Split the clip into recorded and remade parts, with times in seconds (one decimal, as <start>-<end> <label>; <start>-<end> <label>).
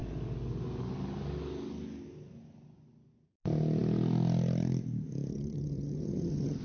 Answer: 0.0-5.3 recorded; 5.3-6.6 remade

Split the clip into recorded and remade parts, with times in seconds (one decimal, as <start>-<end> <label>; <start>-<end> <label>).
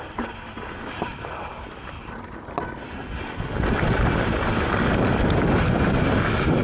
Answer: 0.0-6.6 recorded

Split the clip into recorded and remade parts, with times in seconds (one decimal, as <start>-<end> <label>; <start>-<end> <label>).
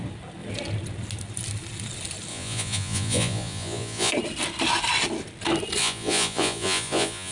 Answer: 0.0-2.3 recorded; 2.3-4.1 remade; 4.1-5.8 recorded; 5.8-7.3 remade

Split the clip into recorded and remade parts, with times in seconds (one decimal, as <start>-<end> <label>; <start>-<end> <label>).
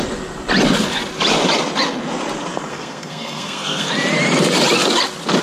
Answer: 0.0-2.7 recorded; 2.7-3.9 remade; 3.9-5.4 recorded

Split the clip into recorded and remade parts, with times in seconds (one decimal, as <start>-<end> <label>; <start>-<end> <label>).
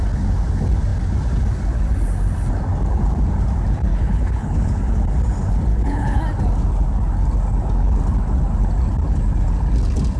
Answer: 0.0-3.9 recorded; 3.9-4.8 remade; 4.8-5.7 recorded; 5.7-6.2 remade; 6.2-10.2 recorded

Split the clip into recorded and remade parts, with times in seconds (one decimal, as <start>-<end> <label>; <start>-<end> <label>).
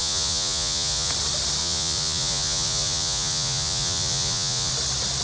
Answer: 0.0-1.1 remade; 1.1-1.6 recorded; 1.6-4.7 remade; 4.7-5.2 recorded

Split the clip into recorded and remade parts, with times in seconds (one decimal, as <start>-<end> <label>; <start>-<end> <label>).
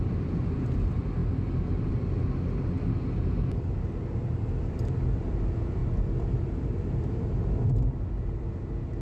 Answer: 0.0-9.0 recorded